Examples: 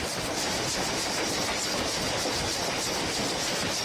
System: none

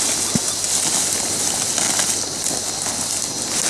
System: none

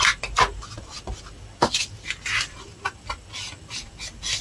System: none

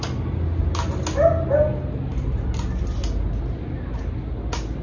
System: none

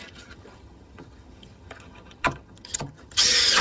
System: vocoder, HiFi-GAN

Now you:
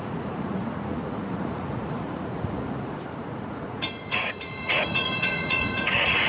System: vocoder, Vocos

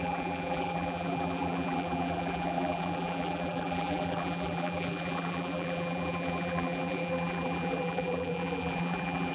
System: vocoder, BigVGAN v2